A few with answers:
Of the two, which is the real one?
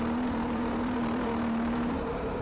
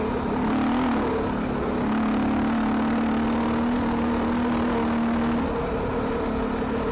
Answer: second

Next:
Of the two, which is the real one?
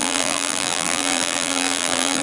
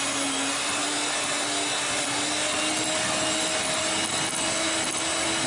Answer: second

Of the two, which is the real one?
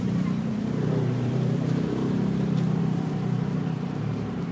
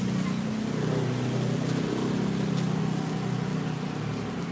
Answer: second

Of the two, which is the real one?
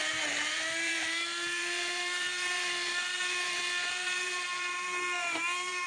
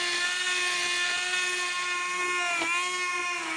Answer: second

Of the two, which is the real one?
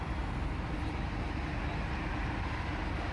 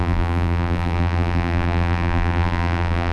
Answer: first